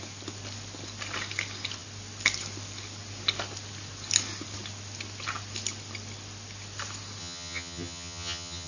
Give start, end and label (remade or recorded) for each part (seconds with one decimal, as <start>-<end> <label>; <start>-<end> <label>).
0.0-7.2 recorded; 7.2-8.7 remade